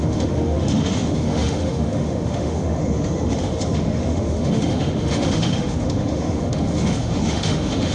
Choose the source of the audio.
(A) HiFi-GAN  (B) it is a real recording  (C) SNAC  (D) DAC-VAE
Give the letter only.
D